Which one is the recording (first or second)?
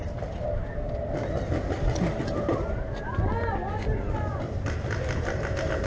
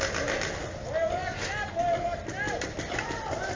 second